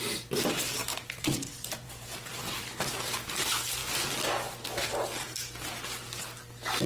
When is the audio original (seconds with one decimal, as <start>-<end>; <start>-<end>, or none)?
0.0-0.8; 2.8-6.9